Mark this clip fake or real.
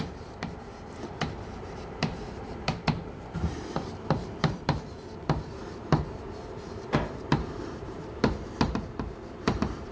fake